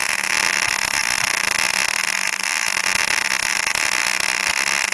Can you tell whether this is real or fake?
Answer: real